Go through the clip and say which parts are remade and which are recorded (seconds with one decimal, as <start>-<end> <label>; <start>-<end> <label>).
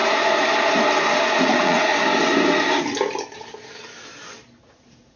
0.0-1.4 recorded; 1.4-1.9 remade; 1.9-4.6 recorded; 4.6-5.2 remade